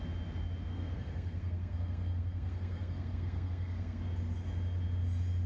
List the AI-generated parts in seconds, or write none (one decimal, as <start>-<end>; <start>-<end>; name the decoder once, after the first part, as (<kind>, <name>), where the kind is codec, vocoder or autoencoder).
0.7-4.0 (codec, SNAC)